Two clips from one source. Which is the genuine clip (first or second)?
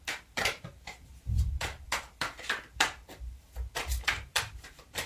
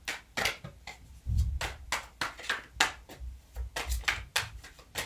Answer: second